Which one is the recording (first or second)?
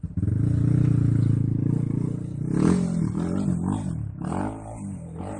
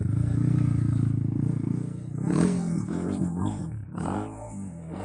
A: first